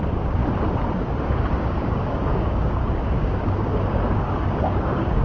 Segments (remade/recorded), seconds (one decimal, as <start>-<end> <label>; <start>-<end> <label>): 0.0-0.4 remade; 0.4-1.2 recorded; 1.2-5.2 remade